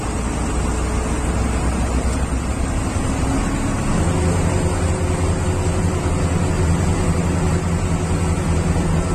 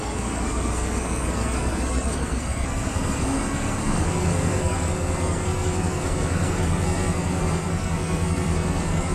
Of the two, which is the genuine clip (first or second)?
first